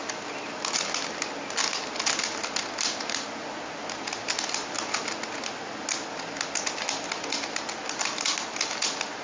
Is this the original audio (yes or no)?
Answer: yes